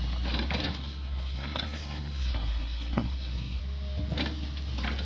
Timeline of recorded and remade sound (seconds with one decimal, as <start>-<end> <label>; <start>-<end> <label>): 0.0-0.6 recorded; 0.6-3.6 remade; 3.6-5.0 recorded